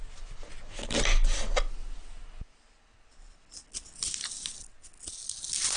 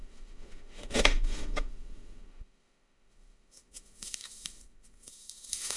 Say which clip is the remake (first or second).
second